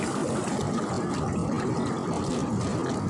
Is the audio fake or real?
real